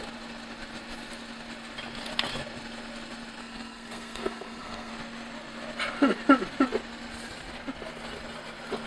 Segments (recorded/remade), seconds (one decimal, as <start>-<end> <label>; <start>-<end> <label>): 0.0-3.4 recorded; 3.4-4.9 remade; 4.9-8.9 recorded